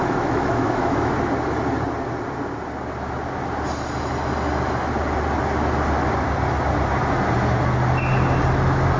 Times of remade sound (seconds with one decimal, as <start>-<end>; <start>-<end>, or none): 0.0-1.1